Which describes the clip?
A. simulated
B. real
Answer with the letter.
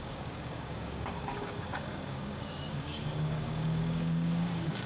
A